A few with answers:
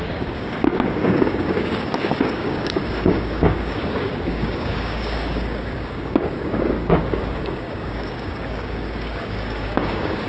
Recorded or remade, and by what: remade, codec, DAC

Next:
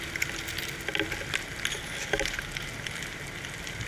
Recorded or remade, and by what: recorded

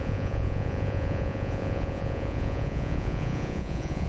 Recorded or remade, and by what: remade, vocoder, Vocos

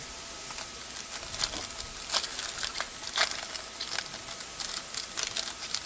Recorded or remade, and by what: recorded